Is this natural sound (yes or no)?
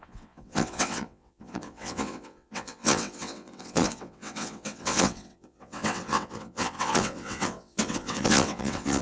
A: no